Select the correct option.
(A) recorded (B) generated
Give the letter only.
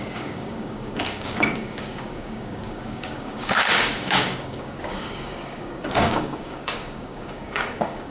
B